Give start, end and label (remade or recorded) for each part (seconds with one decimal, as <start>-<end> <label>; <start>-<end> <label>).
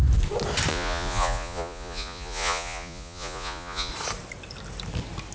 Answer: 0.0-0.7 recorded; 0.7-3.9 remade; 3.9-5.3 recorded